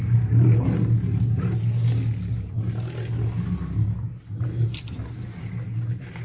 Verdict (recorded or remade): recorded